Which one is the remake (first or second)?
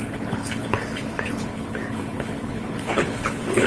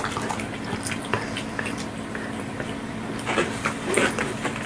first